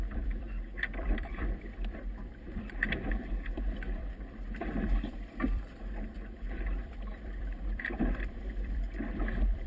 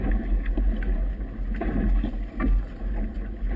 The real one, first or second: second